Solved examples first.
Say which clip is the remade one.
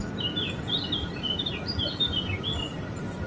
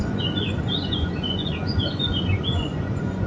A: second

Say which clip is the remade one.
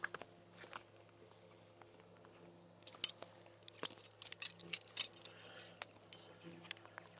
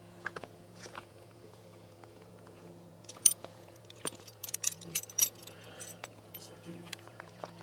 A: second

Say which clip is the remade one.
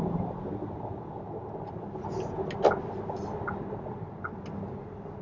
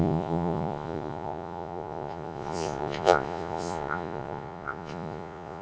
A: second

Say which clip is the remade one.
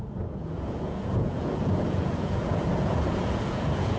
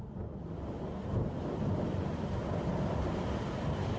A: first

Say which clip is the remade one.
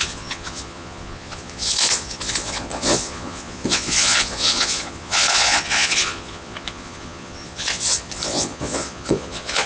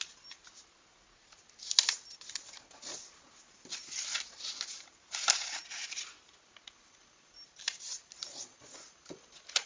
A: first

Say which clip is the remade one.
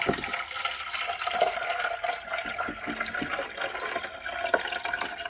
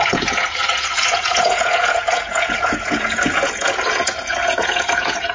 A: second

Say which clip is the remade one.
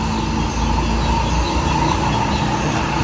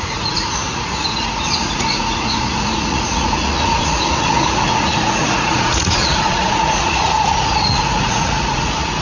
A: second